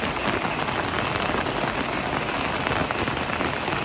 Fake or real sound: real